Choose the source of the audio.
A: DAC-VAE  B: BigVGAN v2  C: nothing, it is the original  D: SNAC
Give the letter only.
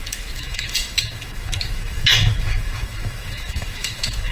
A